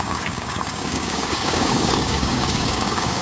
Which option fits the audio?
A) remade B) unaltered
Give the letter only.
A